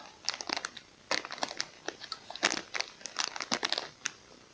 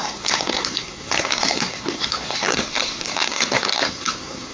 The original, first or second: first